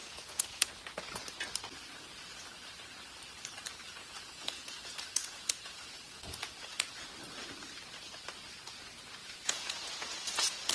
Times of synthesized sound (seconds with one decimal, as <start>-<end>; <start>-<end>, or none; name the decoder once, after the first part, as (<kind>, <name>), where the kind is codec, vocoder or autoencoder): 0.0-0.7 (vocoder, Vocos); 3.8-7.1; 9.2-10.7